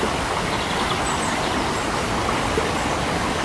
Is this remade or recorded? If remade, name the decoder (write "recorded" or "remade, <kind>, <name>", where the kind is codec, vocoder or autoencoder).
recorded